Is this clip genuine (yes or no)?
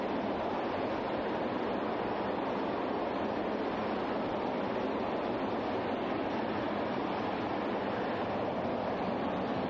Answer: yes